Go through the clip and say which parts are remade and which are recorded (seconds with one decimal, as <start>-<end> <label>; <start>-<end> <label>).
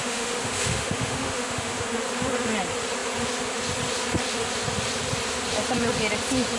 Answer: 0.0-1.9 remade; 1.9-6.6 recorded